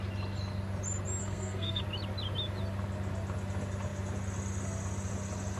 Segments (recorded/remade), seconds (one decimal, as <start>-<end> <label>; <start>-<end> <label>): 0.0-1.2 recorded; 1.2-1.8 remade; 1.8-5.6 recorded